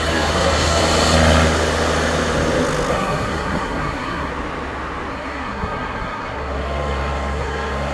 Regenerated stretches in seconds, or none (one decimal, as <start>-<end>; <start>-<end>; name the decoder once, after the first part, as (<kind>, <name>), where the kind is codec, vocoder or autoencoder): 0.0-0.8 (codec, SNAC); 2.9-4.3; 5.1-7.9